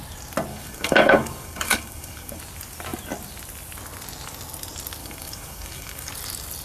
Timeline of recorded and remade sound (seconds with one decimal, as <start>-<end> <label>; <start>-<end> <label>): 0.0-0.5 recorded; 0.5-2.4 remade; 2.4-5.0 recorded; 5.0-6.1 remade; 6.1-6.6 recorded